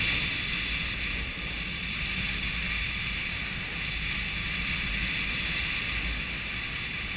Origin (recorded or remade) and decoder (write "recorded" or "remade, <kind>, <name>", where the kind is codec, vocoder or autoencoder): recorded